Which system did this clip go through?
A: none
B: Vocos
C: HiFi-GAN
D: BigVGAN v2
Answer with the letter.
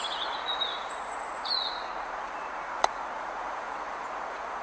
B